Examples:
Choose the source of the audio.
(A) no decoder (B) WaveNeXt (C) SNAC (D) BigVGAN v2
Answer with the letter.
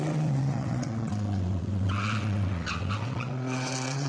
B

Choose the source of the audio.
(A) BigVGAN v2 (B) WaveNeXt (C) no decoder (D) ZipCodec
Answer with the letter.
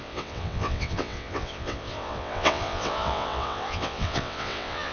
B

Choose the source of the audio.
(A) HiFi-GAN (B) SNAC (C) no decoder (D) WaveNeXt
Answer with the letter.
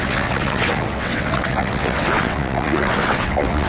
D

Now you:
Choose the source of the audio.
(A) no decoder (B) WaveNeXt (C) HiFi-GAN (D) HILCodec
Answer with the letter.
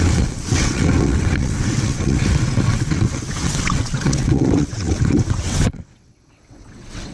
B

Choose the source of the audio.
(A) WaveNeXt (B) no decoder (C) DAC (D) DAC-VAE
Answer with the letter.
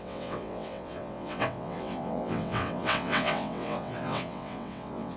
A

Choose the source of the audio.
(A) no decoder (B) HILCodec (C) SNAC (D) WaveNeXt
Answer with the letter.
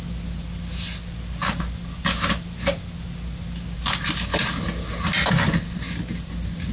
A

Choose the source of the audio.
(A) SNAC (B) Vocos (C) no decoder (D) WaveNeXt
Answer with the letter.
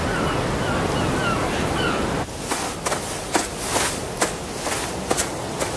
C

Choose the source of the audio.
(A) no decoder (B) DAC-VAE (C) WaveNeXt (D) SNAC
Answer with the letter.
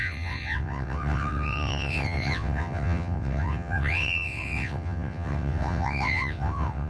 C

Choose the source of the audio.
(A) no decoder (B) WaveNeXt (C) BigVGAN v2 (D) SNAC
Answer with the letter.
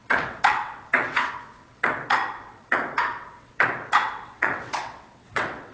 B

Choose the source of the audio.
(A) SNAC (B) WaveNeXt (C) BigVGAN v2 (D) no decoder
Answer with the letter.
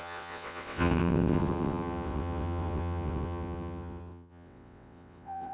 B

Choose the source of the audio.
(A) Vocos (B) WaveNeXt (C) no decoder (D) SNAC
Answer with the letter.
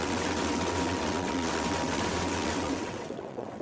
B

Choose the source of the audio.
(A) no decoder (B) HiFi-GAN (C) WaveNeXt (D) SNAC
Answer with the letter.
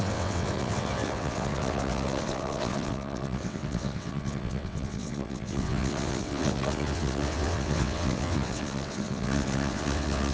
C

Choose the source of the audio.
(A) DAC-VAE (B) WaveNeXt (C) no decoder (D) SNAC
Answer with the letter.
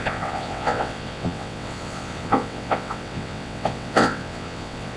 B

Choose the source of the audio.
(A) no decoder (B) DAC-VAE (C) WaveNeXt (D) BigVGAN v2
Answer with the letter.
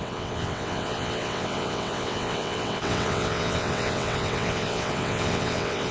C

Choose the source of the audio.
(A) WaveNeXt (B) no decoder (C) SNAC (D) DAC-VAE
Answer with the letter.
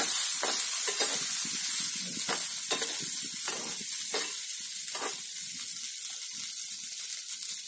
B